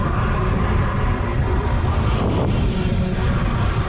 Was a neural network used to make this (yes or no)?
no